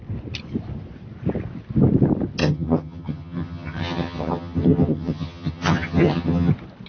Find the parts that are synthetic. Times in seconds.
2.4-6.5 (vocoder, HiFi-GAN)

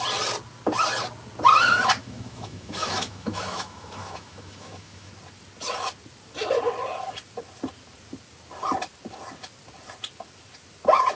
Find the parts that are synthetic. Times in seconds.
2.0-5.1 (autoencoder, DAC-VAE)

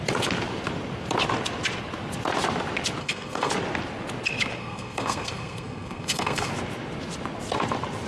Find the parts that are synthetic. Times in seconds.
3.0-3.5 (codec, SNAC); 4.6-6.5